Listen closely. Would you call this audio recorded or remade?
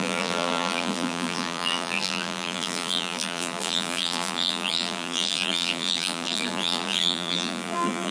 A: remade